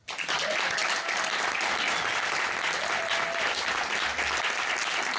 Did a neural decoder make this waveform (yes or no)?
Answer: no